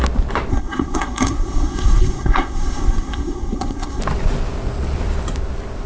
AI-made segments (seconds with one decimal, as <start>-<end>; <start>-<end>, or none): 0.5-4.0